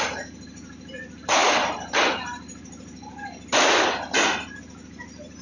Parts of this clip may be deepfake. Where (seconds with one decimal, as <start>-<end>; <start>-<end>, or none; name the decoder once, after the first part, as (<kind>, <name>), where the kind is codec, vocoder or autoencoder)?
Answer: none

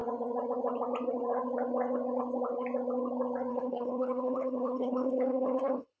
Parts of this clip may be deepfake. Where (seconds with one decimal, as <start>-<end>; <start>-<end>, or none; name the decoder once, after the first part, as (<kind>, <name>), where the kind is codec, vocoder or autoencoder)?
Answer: 3.5-6.0 (codec, HILCodec)

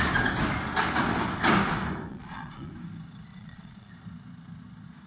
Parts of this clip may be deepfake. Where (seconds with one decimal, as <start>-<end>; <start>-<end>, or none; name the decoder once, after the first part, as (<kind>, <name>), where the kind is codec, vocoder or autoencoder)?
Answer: 2.1-2.7 (vocoder, Vocos); 3.3-3.9

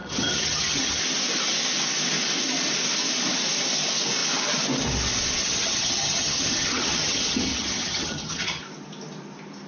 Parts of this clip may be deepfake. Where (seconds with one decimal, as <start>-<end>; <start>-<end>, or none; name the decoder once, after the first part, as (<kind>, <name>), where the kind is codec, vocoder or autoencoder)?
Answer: 0.0-1.0 (vocoder, HiFi-GAN); 5.4-8.6

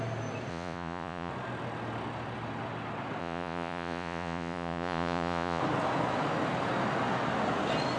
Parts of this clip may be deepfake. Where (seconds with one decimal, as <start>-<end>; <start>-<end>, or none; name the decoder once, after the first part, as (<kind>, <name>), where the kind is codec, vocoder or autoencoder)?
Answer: 0.5-1.3 (vocoder, Vocos); 3.2-5.6

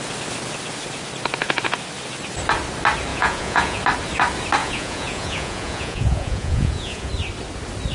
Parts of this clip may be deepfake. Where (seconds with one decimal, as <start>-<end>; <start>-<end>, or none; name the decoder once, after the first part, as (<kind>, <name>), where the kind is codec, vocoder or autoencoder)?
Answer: 3.1-3.8 (vocoder, Vocos); 4.6-7.1

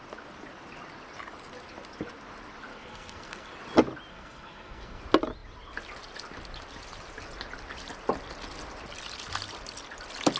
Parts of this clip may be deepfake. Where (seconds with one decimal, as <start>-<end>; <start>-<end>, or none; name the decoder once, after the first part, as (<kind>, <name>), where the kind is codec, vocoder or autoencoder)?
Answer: 2.7-3.5 (codec, SNAC); 4.1-5.0